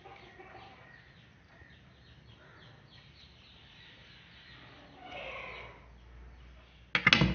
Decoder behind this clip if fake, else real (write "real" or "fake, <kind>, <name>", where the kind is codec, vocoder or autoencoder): real